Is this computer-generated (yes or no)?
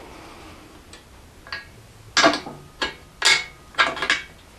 no